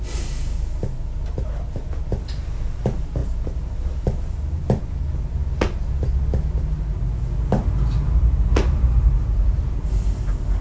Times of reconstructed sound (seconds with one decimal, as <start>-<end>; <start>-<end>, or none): none